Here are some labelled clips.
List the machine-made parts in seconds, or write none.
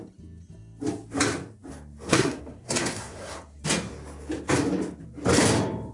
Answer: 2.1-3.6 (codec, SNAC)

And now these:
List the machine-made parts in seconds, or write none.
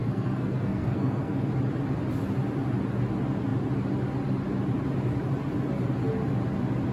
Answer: 0.0-1.5 (codec, SNAC)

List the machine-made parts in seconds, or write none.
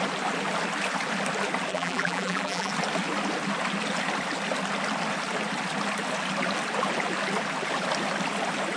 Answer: 1.7-2.7 (vocoder, BigVGAN v2)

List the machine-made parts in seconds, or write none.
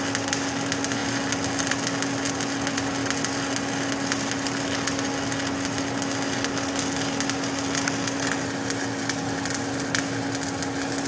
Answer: none